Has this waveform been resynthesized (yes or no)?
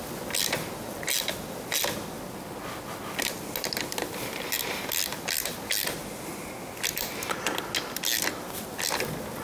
no